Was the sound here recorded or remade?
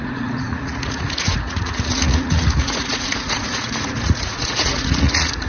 remade